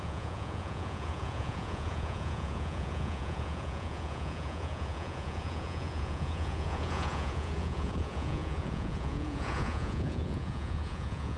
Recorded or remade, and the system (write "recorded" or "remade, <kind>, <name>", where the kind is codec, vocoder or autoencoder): remade, vocoder, Vocos